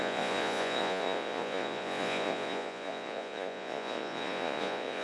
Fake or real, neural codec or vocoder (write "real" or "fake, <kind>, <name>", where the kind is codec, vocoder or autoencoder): fake, vocoder, Vocos